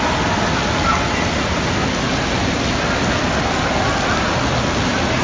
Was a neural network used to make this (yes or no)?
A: no